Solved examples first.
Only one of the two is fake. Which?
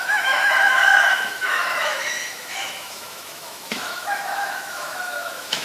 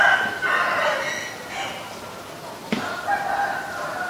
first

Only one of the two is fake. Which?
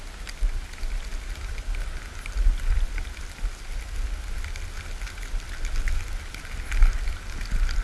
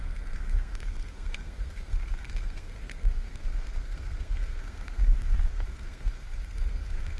second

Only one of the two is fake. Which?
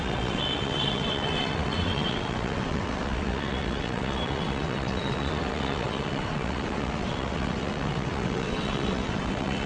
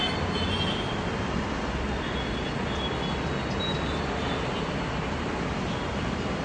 first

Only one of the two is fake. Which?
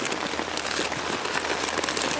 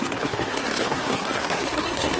second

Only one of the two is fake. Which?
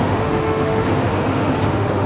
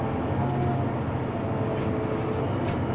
first